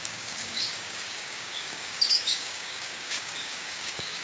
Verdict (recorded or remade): remade